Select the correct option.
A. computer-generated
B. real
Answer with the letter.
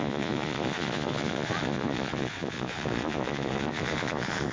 A